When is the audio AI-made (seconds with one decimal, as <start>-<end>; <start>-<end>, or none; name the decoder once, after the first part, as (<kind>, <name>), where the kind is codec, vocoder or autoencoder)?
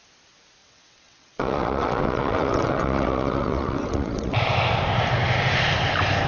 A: 0.6-4.4 (vocoder, WaveNeXt)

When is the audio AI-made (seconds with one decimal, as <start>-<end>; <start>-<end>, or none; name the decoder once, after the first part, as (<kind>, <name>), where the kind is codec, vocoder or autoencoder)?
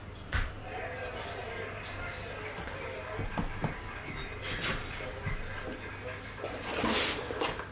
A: none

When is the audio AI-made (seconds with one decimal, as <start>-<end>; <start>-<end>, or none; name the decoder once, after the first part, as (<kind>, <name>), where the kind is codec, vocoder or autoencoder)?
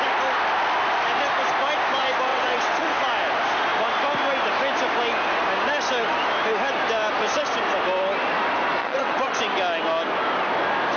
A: 2.3-3.0 (vocoder, WaveNeXt); 8.8-9.4